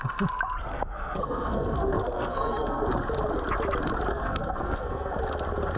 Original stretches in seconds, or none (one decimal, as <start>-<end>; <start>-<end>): 0.0-0.7; 2.9-4.1; 5.2-5.8